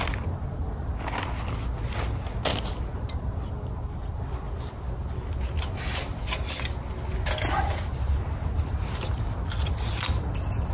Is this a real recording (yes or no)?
yes